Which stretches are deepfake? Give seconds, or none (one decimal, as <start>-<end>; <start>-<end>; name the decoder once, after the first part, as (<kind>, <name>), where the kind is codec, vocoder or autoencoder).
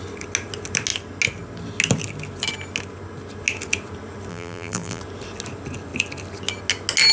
4.3-5.0 (vocoder, BigVGAN v2)